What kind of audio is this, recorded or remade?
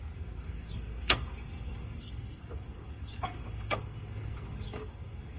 remade